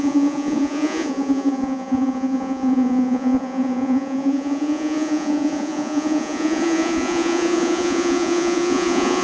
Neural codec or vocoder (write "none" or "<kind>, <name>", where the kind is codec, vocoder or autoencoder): vocoder, Vocos